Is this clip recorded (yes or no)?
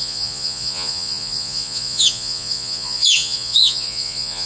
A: no